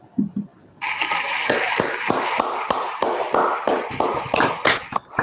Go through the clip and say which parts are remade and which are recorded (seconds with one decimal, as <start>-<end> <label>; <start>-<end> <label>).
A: 0.0-5.2 recorded